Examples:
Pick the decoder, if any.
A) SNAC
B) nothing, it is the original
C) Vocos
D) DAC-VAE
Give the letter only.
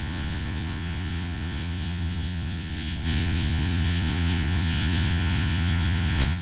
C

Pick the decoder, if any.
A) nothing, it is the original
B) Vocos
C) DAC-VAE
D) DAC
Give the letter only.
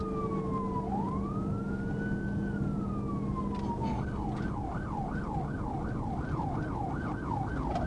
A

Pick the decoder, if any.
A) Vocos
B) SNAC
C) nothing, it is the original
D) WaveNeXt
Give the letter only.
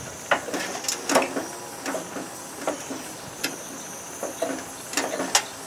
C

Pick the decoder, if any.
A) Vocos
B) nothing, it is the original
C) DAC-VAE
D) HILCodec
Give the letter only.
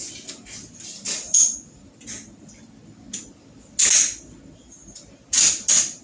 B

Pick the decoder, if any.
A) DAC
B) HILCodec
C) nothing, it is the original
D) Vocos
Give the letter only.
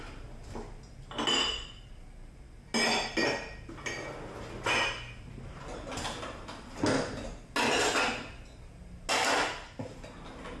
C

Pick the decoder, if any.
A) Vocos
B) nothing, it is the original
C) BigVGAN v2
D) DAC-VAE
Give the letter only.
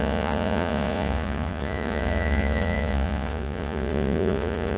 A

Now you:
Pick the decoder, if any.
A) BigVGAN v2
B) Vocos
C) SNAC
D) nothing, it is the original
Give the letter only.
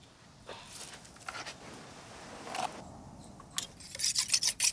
D